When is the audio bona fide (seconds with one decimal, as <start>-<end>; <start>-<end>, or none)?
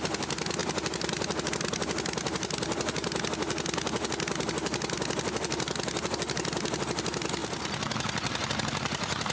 0.0-9.3